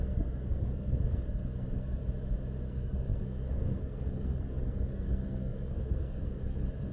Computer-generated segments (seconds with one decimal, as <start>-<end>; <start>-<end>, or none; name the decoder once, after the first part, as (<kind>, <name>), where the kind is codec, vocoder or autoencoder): 0.0-2.0 (codec, SNAC); 2.7-6.9